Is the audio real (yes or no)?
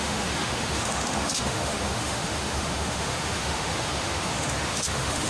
no